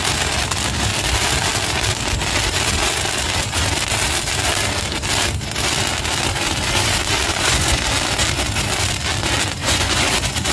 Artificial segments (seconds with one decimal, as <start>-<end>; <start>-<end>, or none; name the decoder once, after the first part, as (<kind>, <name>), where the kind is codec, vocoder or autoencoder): 7.3-7.8 (vocoder, Vocos); 9.6-10.5